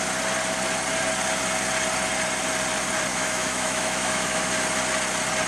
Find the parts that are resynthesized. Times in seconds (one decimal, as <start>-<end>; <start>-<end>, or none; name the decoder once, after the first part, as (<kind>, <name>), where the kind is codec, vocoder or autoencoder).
3.1-4.5 (autoencoder, DAC-VAE)